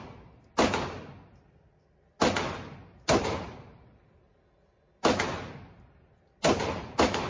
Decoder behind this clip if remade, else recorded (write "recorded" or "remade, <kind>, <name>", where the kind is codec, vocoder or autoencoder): recorded